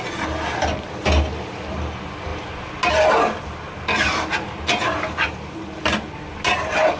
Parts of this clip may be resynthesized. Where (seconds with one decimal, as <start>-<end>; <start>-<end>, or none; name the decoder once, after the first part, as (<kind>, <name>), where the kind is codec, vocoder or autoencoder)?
none